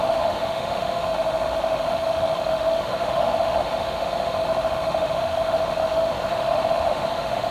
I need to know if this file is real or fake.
fake